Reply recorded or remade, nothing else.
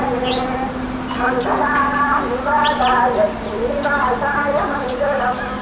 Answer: recorded